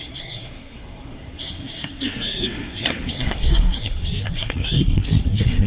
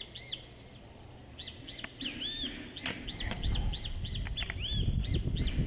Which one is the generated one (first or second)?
first